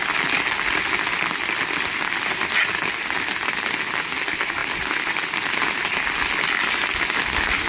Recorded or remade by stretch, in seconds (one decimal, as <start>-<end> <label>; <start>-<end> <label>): 0.0-7.7 recorded